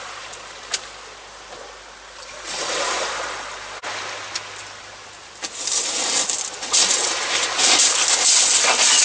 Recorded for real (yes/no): yes